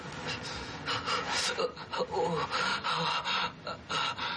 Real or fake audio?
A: real